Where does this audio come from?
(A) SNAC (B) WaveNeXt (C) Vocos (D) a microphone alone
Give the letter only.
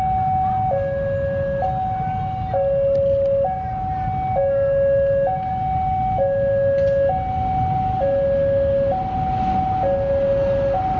D